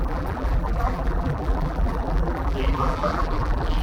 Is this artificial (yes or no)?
yes